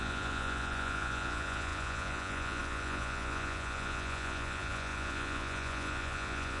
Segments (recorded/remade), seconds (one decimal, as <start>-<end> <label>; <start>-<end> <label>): 0.0-6.6 remade